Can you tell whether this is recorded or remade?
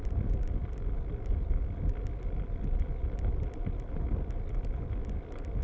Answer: recorded